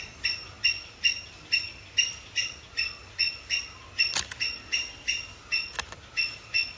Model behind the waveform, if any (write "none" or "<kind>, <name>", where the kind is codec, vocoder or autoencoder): none